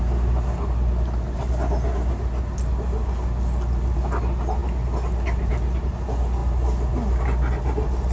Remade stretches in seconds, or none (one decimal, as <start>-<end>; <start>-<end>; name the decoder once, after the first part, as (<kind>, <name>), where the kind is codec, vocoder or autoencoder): none